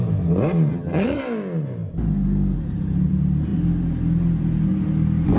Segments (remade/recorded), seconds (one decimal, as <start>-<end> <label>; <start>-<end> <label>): 0.0-0.7 recorded; 0.7-1.2 remade; 1.2-5.4 recorded